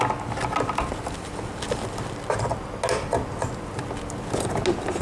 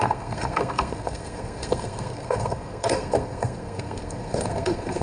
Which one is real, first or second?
first